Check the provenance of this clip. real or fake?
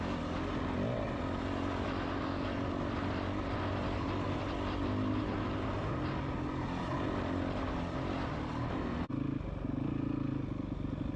real